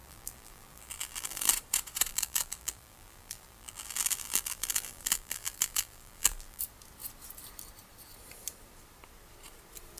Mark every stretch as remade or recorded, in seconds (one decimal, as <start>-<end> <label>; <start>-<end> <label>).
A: 0.0-1.5 remade; 1.5-2.1 recorded; 2.1-6.6 remade; 6.6-10.0 recorded